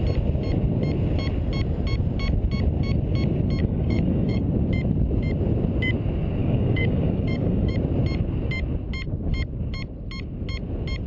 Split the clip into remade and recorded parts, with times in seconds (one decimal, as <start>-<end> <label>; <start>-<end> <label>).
0.0-3.6 recorded; 3.6-4.4 remade; 4.4-6.4 recorded; 6.4-7.7 remade; 7.7-11.1 recorded